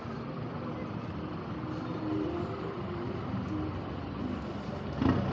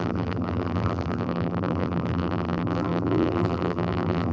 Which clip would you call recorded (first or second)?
first